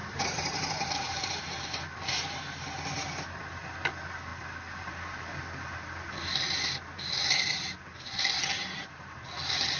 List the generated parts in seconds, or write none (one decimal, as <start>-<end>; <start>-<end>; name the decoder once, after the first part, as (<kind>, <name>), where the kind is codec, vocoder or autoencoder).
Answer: 0.0-1.4 (vocoder, BigVGAN v2)